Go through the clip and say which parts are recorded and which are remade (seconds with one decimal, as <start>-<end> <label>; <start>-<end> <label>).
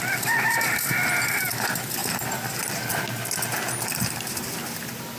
0.0-5.2 recorded